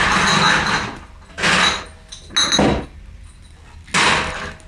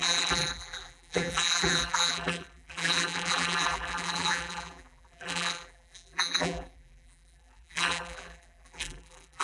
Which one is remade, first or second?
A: second